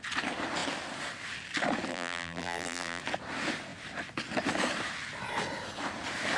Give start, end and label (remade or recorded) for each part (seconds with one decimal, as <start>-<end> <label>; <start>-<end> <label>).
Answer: 0.0-1.9 recorded; 1.9-3.0 remade; 3.0-6.4 recorded